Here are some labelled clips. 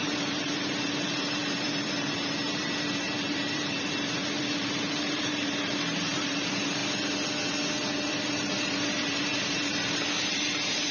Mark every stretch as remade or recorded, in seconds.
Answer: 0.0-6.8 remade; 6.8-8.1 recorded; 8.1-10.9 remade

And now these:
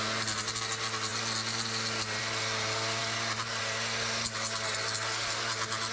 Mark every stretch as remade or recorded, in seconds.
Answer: 0.0-5.9 recorded

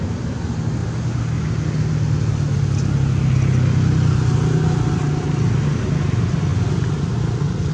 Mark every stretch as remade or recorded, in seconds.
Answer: 0.0-7.7 recorded

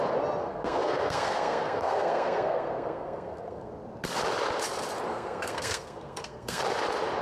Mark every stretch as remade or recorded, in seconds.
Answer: 0.0-0.4 recorded; 0.4-3.7 remade; 3.7-5.1 recorded; 5.1-6.6 remade; 6.6-7.2 recorded

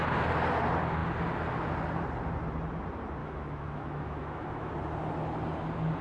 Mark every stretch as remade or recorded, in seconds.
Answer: 0.0-3.2 recorded; 3.2-4.7 remade; 4.7-6.0 recorded